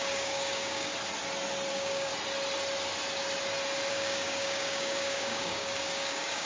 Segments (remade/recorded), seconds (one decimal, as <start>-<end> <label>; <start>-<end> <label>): 0.0-0.9 remade; 0.9-1.7 recorded; 1.7-2.1 remade; 2.1-3.9 recorded; 3.9-6.5 remade

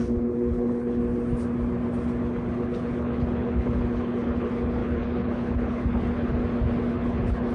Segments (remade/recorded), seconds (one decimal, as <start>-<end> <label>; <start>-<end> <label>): 0.0-1.0 remade; 1.0-2.2 recorded; 2.2-6.4 remade; 6.4-6.9 recorded; 6.9-7.5 remade

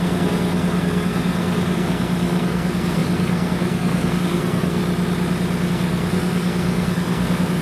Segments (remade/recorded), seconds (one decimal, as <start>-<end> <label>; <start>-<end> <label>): 0.0-4.8 remade; 4.8-5.7 recorded; 5.7-7.6 remade

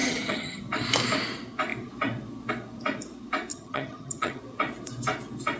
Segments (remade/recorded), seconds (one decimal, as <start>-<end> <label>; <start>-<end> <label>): 0.0-0.6 remade; 0.6-3.5 recorded; 3.5-4.4 remade; 4.4-5.6 recorded

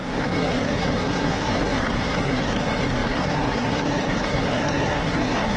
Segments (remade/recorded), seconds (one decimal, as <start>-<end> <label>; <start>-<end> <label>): 0.0-5.6 remade

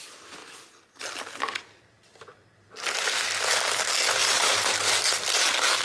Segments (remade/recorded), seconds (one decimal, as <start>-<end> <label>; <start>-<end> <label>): 0.0-4.2 recorded; 4.2-5.1 remade; 5.1-5.8 recorded

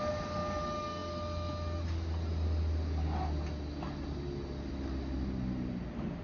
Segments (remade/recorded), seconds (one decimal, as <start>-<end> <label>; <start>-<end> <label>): 0.0-6.2 recorded